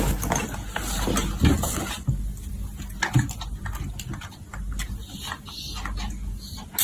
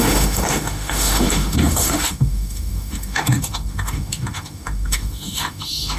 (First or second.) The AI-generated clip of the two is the second